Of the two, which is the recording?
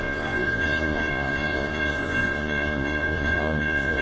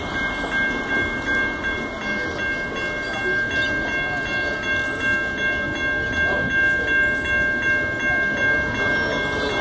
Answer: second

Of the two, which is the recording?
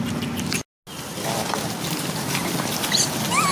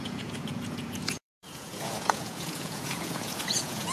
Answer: first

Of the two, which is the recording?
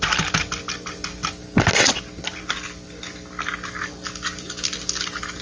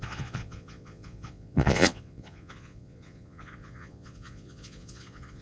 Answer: first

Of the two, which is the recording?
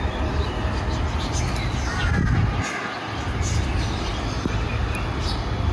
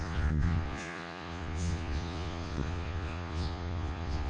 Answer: first